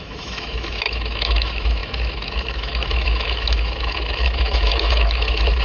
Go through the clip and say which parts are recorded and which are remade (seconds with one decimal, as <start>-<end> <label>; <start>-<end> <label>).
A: 0.0-5.6 remade